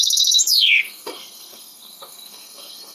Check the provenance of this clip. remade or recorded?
remade